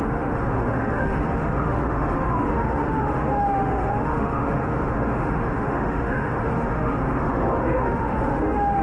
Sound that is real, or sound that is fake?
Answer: fake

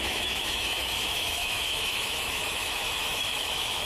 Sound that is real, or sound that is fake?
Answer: fake